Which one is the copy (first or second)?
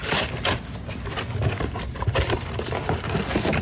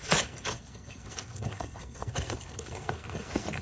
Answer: second